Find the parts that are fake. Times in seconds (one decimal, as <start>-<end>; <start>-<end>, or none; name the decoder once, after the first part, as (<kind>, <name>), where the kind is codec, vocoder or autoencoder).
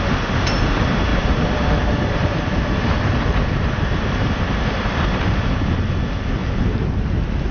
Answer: 1.1-5.4 (vocoder, BigVGAN v2); 6.4-7.0